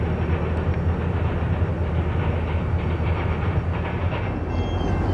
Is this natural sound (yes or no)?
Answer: yes